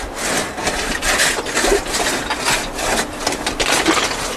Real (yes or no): yes